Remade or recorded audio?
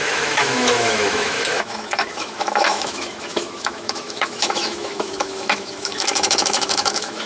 remade